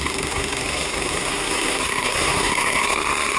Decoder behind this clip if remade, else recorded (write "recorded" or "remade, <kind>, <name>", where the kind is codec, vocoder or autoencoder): remade, codec, SNAC